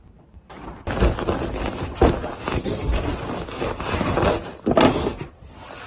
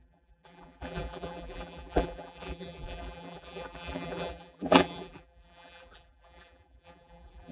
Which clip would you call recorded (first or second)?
first